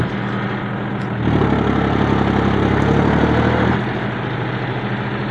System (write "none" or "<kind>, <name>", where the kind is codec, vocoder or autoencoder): none